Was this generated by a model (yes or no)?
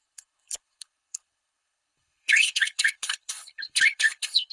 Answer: yes